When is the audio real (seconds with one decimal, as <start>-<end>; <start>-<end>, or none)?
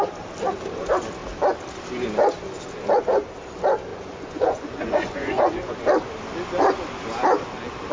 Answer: 0.0-3.9; 5.7-7.9